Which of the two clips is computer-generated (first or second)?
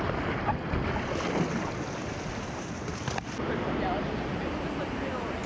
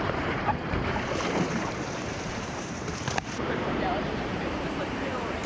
second